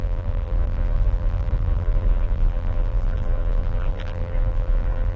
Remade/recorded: remade